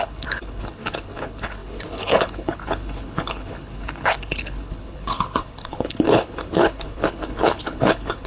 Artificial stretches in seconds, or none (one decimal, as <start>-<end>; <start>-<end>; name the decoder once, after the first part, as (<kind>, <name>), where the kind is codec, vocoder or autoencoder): 0.0-8.3 (codec, HILCodec)

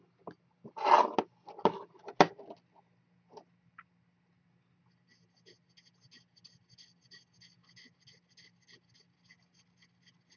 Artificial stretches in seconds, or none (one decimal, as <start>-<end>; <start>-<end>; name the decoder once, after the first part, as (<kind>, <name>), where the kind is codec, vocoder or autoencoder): none

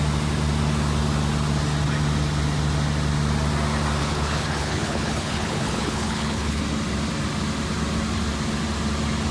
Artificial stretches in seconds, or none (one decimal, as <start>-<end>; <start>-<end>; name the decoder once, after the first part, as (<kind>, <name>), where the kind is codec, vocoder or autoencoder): 4.0-6.6 (codec, HILCodec)